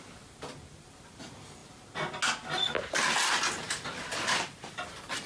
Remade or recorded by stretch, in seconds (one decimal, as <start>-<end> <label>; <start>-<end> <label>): 0.0-5.3 recorded